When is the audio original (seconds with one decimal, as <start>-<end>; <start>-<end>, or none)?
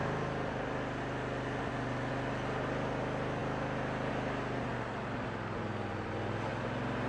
0.0-7.1